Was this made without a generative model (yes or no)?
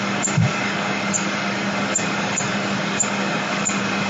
no